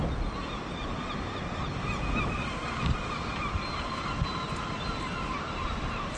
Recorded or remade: recorded